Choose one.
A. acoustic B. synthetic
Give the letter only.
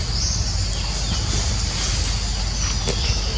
A